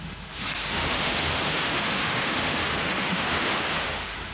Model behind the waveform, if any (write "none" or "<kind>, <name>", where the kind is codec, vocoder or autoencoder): autoencoder, DAC-VAE